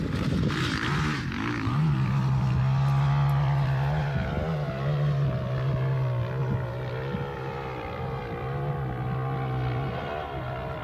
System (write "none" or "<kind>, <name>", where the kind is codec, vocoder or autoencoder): none